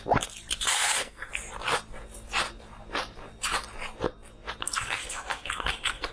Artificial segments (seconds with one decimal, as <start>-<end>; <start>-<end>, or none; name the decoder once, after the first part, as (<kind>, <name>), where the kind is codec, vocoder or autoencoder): 0.7-1.3 (codec, SNAC); 4.6-6.1